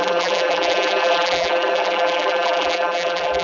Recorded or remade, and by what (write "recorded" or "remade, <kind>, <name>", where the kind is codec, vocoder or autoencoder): remade, vocoder, BigVGAN v2